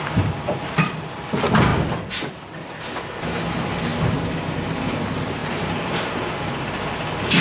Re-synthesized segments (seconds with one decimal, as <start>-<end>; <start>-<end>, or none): none